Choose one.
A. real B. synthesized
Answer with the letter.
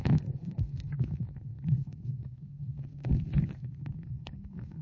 B